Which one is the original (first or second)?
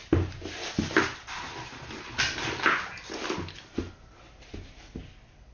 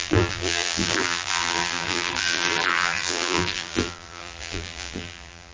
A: first